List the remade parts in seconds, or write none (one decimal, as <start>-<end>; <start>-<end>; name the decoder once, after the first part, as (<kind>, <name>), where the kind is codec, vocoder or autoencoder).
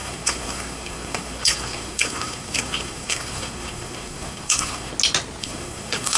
0.0-4.9 (codec, SNAC); 5.4-6.2